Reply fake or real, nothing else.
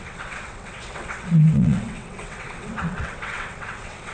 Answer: fake